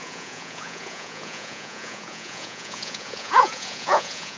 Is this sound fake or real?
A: fake